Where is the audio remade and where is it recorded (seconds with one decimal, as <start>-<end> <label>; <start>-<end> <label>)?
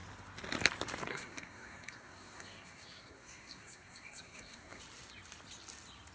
0.0-1.1 recorded; 1.1-4.8 remade; 4.8-6.1 recorded